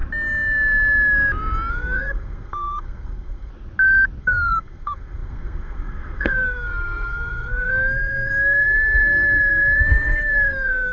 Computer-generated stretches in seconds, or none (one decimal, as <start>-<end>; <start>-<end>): 1.7-3.5; 4.2-10.9